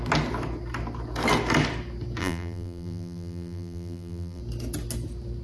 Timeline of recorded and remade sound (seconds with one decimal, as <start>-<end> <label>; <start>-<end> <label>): 0.0-2.2 recorded; 2.2-4.4 remade; 4.4-5.4 recorded